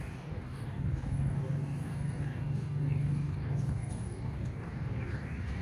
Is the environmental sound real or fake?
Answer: fake